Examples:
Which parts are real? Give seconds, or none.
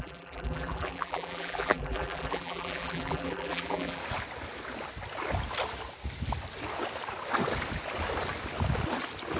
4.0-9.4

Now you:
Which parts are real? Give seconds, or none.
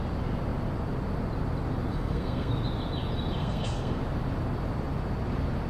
0.0-1.9; 2.5-3.4; 4.0-5.7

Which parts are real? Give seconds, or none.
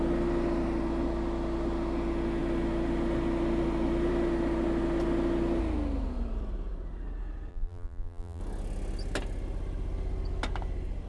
0.0-7.5; 8.4-11.1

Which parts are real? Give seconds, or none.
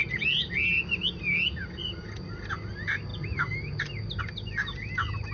0.0-5.3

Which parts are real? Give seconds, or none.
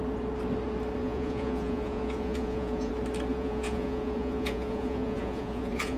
0.0-1.0; 2.9-3.3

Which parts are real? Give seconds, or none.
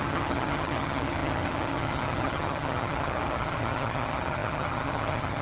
none